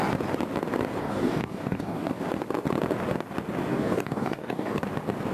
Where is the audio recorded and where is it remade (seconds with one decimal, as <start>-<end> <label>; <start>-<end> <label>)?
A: 0.0-1.0 recorded; 1.0-2.2 remade; 2.2-3.7 recorded; 3.7-4.8 remade; 4.8-5.3 recorded